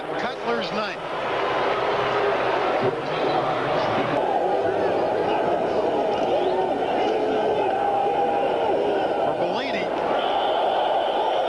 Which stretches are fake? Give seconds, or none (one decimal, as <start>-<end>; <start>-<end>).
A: none